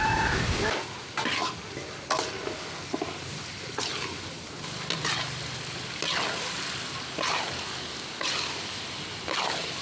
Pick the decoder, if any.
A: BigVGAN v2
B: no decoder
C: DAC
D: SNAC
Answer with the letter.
B